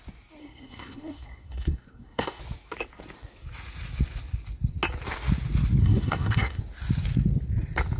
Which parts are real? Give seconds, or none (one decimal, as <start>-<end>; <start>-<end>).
0.0-0.4; 2.4-5.8; 6.6-8.0